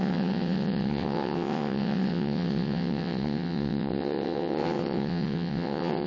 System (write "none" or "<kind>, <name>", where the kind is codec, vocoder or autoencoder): vocoder, WaveNeXt